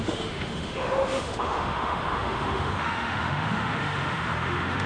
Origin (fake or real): fake